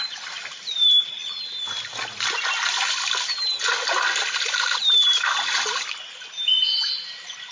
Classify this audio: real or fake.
real